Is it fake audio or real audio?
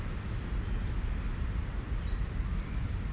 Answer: real